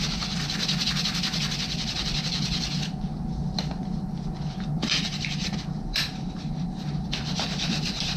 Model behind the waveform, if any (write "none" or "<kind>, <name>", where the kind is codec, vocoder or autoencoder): none